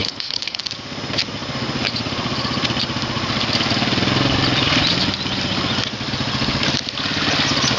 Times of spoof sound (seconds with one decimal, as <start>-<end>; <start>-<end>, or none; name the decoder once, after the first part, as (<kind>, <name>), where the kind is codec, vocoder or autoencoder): 0.0-0.6 (codec, HILCodec)